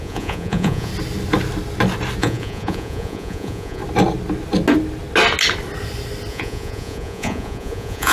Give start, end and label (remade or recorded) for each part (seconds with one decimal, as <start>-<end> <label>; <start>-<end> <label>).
0.0-0.9 remade; 0.9-2.2 recorded; 2.2-3.8 remade; 3.8-6.3 recorded; 6.3-8.1 remade